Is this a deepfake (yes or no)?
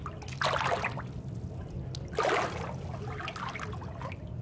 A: no